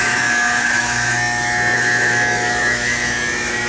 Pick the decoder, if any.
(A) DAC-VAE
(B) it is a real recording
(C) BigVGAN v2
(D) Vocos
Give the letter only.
A